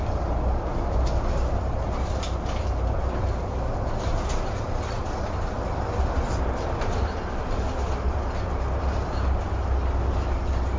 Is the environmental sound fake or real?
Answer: real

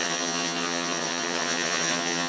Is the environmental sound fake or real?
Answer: fake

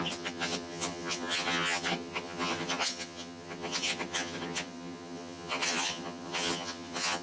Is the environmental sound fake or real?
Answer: fake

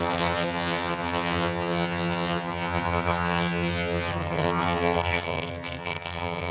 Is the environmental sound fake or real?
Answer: fake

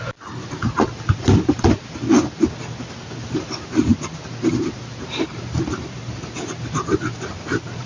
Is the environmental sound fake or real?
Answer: real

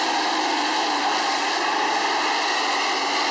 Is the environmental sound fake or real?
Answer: real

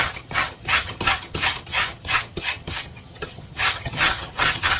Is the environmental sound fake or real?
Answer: fake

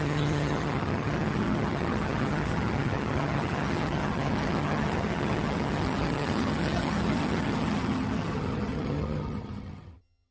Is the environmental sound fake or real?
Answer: fake